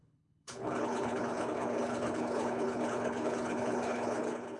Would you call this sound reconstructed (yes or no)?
yes